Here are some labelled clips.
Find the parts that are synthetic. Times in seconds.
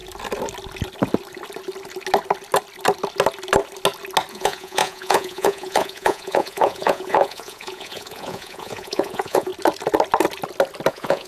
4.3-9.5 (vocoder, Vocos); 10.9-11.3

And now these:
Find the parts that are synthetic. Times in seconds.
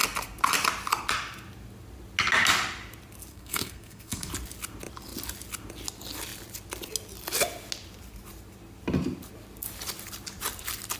3.3-4.3 (codec, SNAC)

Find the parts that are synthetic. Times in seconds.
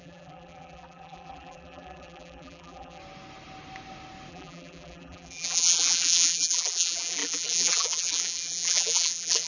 0.0-3.0 (vocoder, BigVGAN v2); 4.3-9.5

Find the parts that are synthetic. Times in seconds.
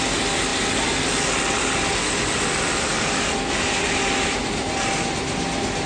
none